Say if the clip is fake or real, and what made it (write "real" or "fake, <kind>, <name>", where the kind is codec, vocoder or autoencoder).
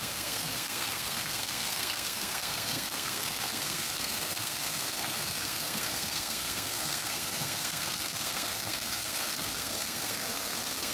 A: fake, codec, SNAC